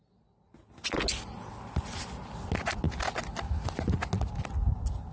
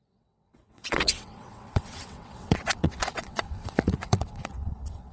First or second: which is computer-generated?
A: second